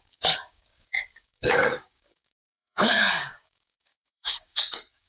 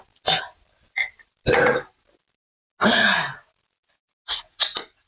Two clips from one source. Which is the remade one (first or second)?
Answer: first